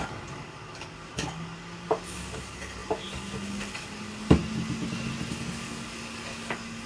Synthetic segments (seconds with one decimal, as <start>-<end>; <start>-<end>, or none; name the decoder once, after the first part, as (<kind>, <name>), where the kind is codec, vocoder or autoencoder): 0.0-4.4 (codec, DAC); 5.3-6.9